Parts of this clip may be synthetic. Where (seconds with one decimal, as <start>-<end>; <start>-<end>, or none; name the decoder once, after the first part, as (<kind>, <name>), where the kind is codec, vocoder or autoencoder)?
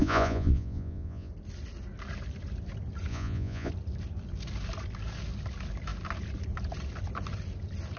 0.0-1.3 (vocoder, Vocos); 3.1-3.7